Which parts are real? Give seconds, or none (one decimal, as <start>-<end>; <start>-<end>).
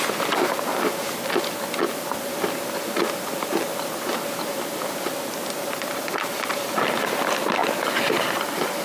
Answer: 0.0-8.8